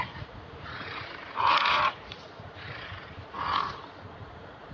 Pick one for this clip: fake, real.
fake